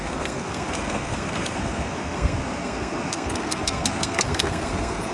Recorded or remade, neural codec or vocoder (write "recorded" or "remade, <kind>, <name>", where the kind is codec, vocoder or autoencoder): remade, codec, SNAC